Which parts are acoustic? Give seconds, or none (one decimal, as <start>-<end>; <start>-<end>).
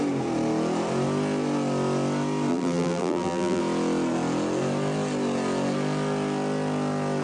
0.0-2.5; 3.6-7.2